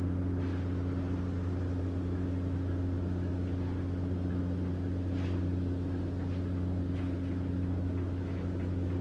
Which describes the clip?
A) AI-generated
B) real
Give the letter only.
B